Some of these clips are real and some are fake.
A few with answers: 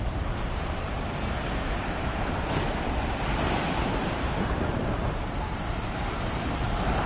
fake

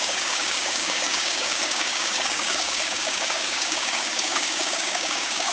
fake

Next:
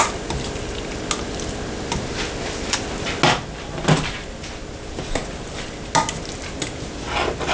real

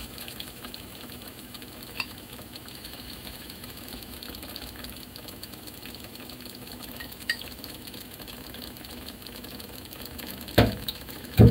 fake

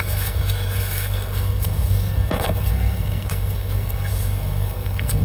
fake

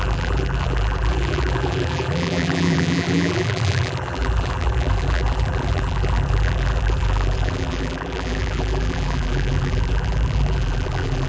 fake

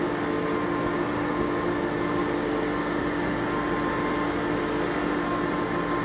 real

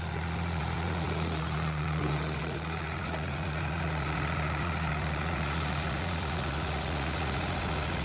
fake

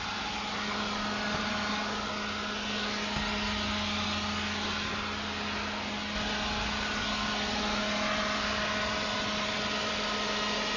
real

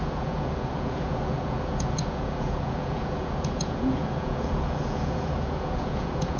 fake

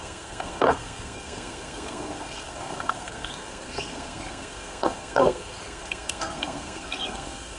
fake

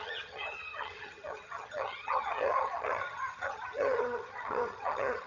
fake